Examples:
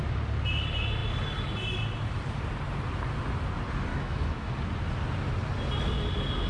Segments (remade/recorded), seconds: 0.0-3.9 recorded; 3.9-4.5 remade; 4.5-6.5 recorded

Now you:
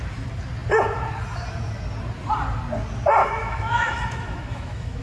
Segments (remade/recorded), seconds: 0.0-3.2 recorded; 3.2-5.0 remade

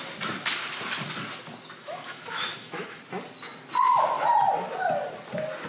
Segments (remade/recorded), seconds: 0.0-1.8 recorded; 1.8-3.0 remade; 3.0-5.7 recorded

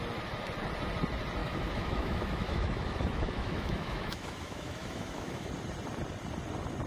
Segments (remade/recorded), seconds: 0.0-1.4 recorded; 1.4-5.5 remade; 5.5-6.9 recorded

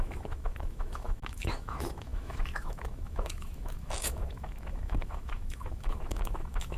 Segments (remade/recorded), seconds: 0.0-6.8 remade

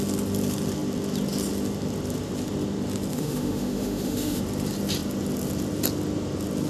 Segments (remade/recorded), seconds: 0.0-3.1 recorded; 3.1-4.4 remade; 4.4-6.7 recorded

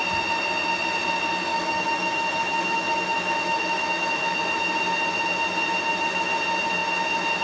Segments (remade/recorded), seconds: 0.0-1.5 recorded; 1.5-4.4 remade; 4.4-7.4 recorded